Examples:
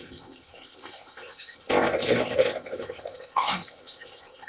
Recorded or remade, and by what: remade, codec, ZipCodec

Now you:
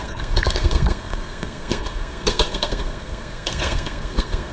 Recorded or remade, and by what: remade, codec, SNAC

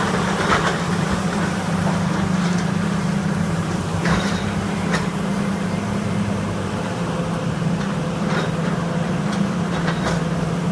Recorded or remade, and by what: remade, vocoder, BigVGAN v2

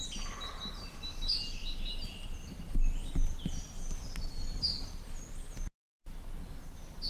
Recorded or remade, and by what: recorded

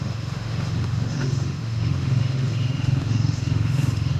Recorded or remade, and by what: remade, autoencoder, DAC-VAE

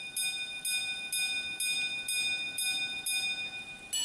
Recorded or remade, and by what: recorded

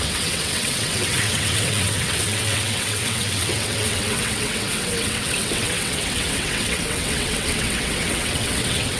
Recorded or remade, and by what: remade, vocoder, WaveNeXt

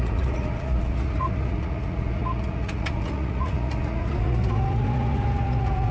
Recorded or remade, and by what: remade, vocoder, Vocos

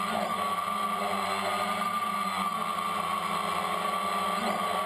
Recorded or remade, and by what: recorded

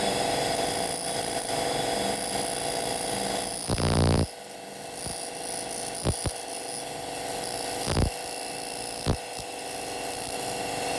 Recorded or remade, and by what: recorded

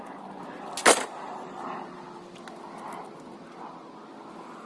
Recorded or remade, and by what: recorded